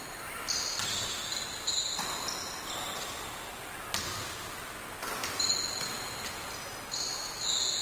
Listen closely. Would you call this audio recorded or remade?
recorded